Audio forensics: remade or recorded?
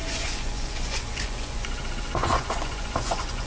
remade